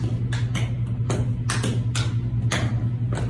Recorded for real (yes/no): yes